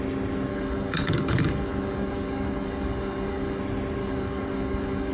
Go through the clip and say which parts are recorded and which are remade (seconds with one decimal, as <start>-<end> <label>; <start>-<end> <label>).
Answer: 0.0-0.5 recorded; 0.5-3.6 remade; 3.6-4.0 recorded; 4.0-5.1 remade